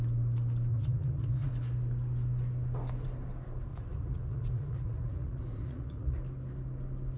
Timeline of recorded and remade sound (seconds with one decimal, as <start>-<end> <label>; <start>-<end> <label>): 0.0-0.7 recorded; 0.7-1.5 remade; 1.5-3.7 recorded; 3.7-6.2 remade; 6.2-7.2 recorded